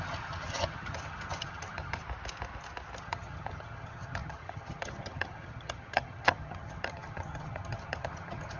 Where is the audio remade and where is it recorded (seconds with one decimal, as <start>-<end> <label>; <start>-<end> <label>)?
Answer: 0.0-2.0 remade; 2.0-3.0 recorded; 3.0-8.6 remade